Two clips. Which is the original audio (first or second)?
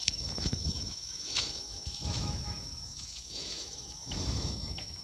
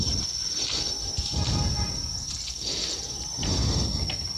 second